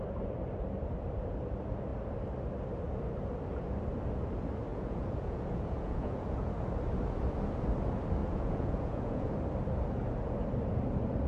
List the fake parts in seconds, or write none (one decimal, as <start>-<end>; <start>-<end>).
4.7-6.5; 8.2-9.3